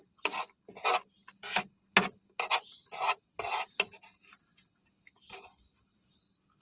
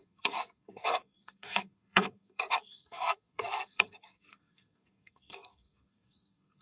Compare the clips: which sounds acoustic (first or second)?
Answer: first